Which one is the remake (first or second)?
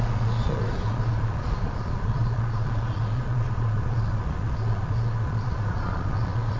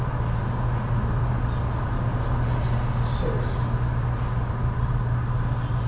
first